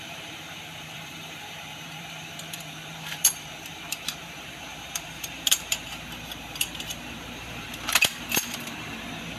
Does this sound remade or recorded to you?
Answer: remade